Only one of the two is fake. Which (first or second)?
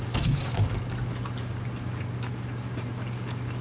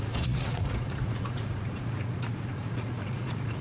second